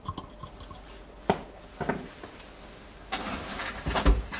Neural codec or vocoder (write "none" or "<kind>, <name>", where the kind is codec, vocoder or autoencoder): none